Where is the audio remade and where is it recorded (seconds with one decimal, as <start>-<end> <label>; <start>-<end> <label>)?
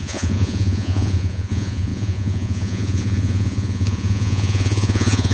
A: 0.0-5.3 remade